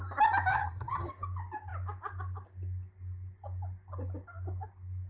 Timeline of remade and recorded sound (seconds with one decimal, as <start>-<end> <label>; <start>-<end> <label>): 0.0-0.5 recorded; 0.5-1.1 remade; 1.1-5.1 recorded